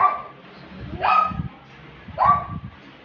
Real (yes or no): yes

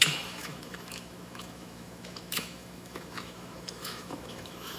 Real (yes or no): no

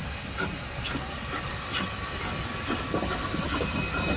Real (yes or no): yes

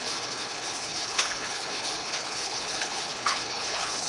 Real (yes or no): no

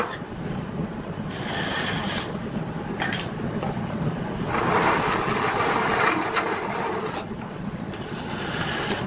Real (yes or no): yes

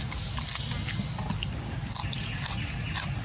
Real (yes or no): yes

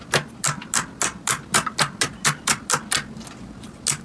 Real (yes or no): yes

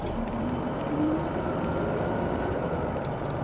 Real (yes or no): no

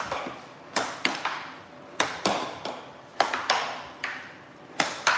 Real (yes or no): yes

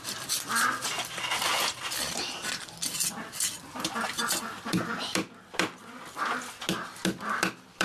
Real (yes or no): yes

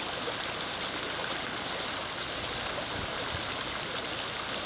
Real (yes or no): yes